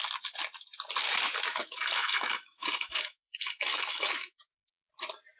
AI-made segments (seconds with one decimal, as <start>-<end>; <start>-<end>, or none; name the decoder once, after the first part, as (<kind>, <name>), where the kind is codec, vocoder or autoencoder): 1.5-4.7 (autoencoder, DAC-VAE)